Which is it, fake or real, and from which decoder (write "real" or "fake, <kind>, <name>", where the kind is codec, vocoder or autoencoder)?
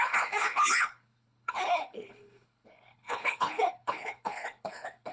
fake, codec, HILCodec